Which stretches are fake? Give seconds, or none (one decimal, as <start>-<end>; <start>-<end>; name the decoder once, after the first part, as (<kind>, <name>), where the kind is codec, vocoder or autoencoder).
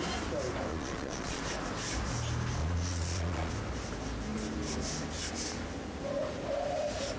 0.7-1.4 (vocoder, Vocos); 2.6-3.5